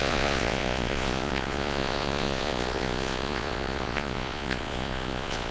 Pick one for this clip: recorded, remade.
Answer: remade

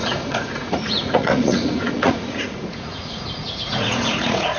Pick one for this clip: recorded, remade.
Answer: remade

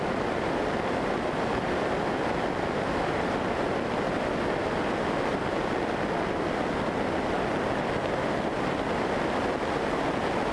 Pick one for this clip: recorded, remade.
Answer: recorded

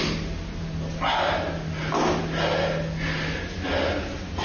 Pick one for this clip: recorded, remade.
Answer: recorded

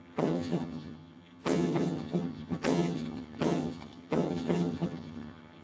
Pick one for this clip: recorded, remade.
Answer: remade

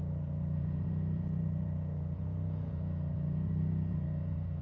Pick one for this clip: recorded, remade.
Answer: remade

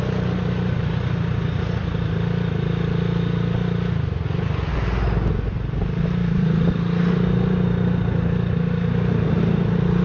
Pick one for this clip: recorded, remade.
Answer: recorded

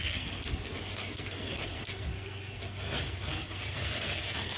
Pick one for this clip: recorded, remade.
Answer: remade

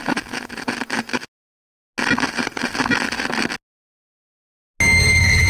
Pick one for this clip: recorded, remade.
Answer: recorded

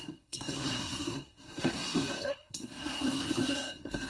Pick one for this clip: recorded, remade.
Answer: remade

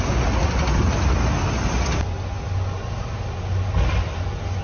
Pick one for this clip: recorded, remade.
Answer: recorded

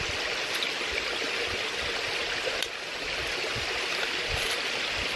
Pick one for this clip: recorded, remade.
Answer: recorded